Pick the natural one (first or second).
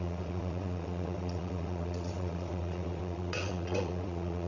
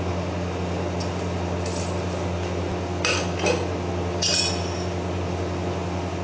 second